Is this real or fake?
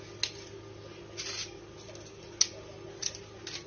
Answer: real